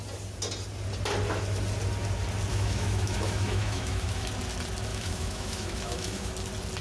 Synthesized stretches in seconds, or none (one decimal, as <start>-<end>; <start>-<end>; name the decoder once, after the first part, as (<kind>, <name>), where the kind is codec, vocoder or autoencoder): 2.5-4.3 (autoencoder, DAC-VAE); 4.9-6.3

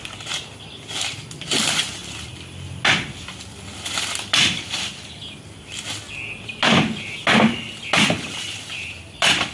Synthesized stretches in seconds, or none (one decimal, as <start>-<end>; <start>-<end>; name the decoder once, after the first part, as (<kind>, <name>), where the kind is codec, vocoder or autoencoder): none

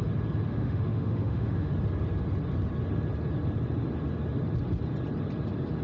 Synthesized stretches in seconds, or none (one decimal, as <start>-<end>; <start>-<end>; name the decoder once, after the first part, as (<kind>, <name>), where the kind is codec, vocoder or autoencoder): 0.5-1.7 (autoencoder, DAC-VAE)

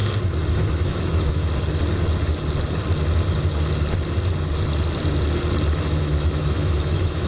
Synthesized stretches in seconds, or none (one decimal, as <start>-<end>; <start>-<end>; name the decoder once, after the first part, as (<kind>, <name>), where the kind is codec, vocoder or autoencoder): 0.5-1.4 (autoencoder, DAC-VAE); 5.8-7.3